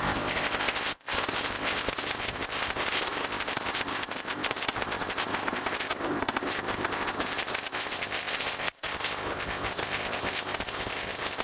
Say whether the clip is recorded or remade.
remade